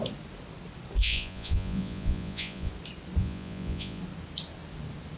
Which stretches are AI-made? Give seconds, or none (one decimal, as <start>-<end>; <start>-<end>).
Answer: 1.0-2.7; 3.2-4.0